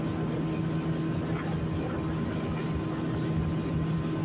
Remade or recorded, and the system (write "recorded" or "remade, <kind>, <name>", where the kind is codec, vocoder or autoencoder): recorded